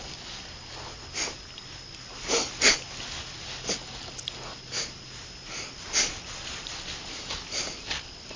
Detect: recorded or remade recorded